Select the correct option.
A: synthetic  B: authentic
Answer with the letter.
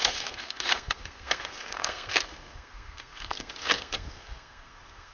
A